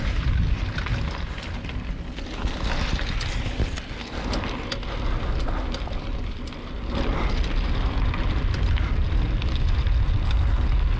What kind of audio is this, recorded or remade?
recorded